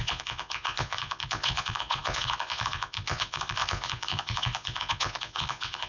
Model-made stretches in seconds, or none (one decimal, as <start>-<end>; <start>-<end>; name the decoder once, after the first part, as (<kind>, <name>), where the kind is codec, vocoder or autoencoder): 0.0-5.9 (vocoder, Vocos)